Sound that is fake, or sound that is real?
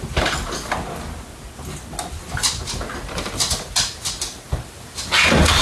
real